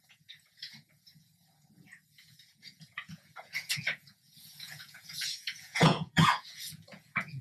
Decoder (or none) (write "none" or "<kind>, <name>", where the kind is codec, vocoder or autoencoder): vocoder, Vocos